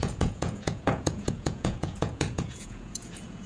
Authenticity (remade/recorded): remade